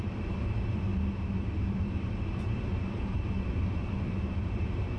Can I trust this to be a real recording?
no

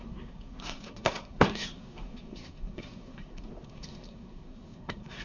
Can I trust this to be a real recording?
no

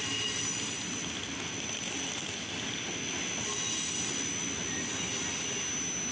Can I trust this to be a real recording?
yes